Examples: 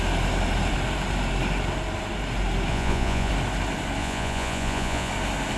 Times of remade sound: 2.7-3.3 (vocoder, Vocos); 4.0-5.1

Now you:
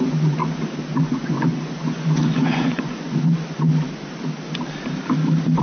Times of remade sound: 0.0-0.4 (vocoder, Vocos); 0.9-3.7

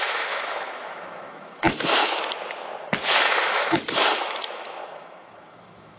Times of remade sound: 0.0-2.2 (autoencoder, DAC-VAE); 3.1-6.0

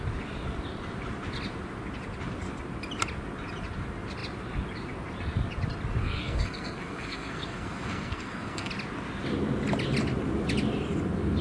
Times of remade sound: 6.0-8.7 (codec, SNAC)

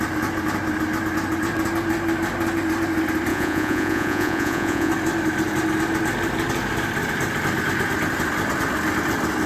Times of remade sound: 3.3-4.9 (vocoder, Vocos)

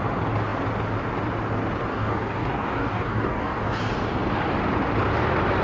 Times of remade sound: 1.9-3.8 (codec, DAC)

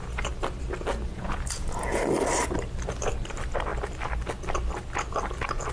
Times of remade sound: 1.1-2.0 (vocoder, Vocos)

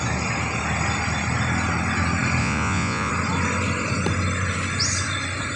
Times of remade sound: 2.4-3.1 (vocoder, Vocos)